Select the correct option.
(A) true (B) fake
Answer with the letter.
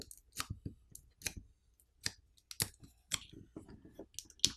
A